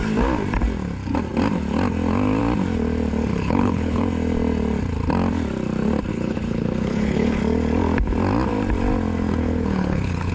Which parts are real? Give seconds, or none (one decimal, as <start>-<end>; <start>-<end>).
0.0-3.3; 4.0-6.1; 7.4-9.4